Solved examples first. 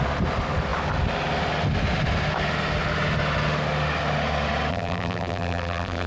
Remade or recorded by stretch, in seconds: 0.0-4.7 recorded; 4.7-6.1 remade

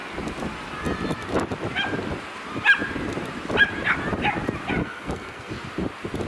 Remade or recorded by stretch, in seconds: 0.0-4.8 recorded; 4.8-5.5 remade; 5.5-6.3 recorded

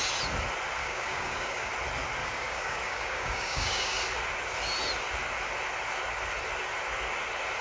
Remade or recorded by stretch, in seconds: 0.0-0.8 recorded; 0.8-1.7 remade; 1.7-2.2 recorded; 2.2-4.0 remade; 4.0-7.6 recorded

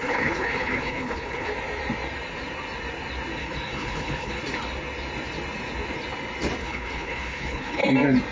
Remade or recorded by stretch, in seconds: 0.0-1.5 remade; 1.5-3.4 recorded; 3.4-4.4 remade; 4.4-6.6 recorded; 6.6-7.8 remade; 7.8-8.3 recorded

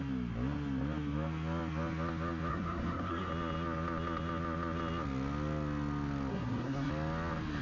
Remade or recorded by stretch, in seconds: 0.0-2.5 recorded; 2.5-3.3 remade; 3.3-6.3 recorded; 6.3-6.9 remade; 6.9-7.6 recorded